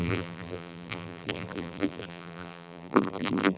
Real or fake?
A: fake